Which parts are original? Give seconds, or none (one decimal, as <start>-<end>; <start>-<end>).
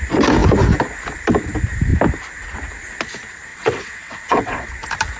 0.0-3.5; 4.7-5.2